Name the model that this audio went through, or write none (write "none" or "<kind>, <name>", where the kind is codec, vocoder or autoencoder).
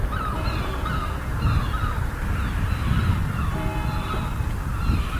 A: none